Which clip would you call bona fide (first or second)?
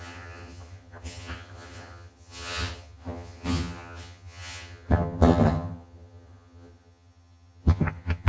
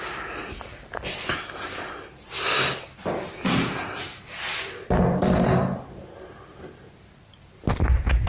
second